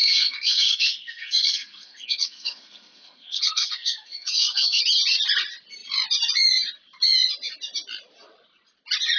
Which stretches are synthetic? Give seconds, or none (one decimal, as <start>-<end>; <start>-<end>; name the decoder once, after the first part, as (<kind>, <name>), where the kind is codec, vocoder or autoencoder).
0.0-4.8 (codec, SNAC)